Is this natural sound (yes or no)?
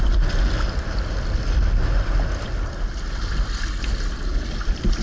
yes